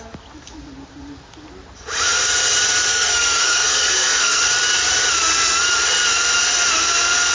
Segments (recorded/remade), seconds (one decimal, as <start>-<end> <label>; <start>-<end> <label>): 0.0-2.9 recorded; 2.9-4.4 remade; 4.4-7.3 recorded